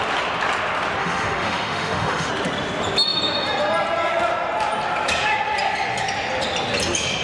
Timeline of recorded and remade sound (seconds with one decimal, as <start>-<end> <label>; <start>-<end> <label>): 0.0-1.0 recorded; 1.0-2.3 remade; 2.3-7.2 recorded